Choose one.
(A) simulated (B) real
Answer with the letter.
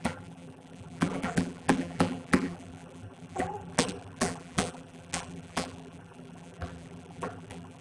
A